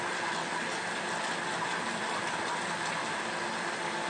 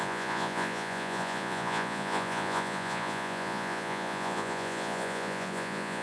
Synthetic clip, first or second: second